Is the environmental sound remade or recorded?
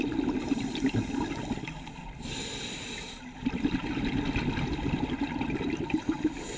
recorded